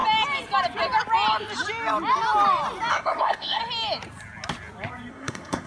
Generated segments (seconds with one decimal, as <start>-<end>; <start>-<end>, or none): 2.9-3.6; 5.1-5.7